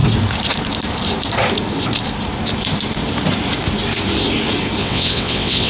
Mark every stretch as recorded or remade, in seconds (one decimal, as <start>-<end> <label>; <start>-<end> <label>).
0.0-4.8 recorded; 4.8-5.7 remade